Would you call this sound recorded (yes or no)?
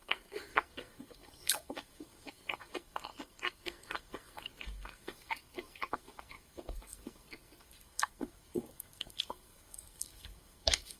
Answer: no